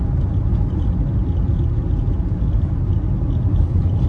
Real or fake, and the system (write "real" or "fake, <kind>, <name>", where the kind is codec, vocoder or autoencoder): real